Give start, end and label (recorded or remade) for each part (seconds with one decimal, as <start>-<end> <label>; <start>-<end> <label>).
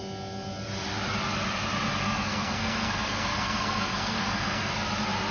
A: 0.0-1.9 recorded; 1.9-4.7 remade; 4.7-5.3 recorded